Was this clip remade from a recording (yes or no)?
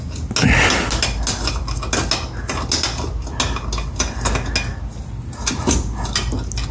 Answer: no